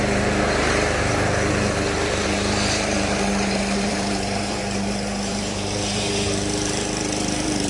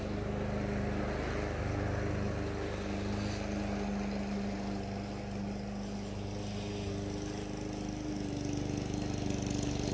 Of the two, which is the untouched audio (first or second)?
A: second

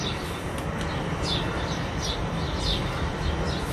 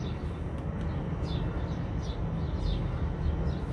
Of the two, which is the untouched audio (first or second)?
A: second